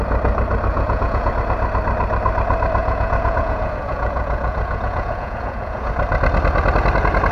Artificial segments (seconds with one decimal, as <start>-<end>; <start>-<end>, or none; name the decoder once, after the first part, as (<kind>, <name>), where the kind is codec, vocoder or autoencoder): 0.7-1.3 (vocoder, Vocos); 2.8-5.9